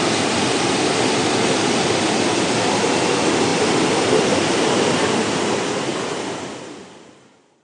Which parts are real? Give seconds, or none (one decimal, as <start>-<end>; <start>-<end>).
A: 0.0-7.6